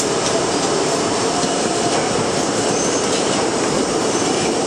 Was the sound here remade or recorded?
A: remade